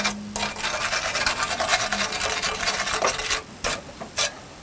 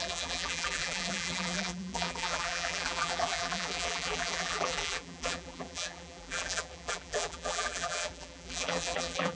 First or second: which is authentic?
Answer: first